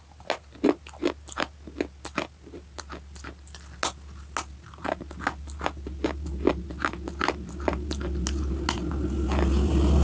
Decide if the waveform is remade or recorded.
recorded